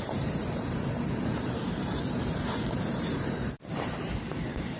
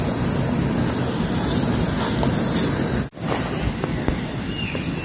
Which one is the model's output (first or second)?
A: first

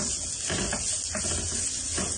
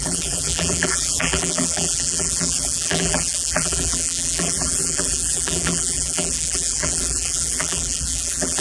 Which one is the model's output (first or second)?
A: second